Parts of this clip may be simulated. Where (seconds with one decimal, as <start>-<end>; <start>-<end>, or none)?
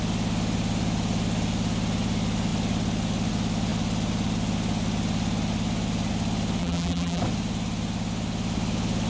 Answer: 6.6-7.2